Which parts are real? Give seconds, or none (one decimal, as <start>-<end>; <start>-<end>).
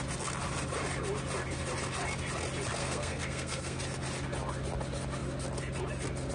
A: 0.0-2.8; 3.8-6.3